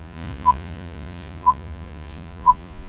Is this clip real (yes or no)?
no